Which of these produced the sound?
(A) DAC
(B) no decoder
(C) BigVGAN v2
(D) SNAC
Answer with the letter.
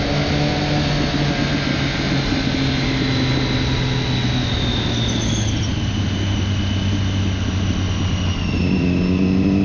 B